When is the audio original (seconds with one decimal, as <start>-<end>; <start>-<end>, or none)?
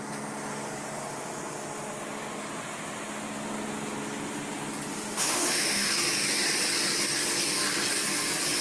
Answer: 0.0-4.9; 5.9-8.6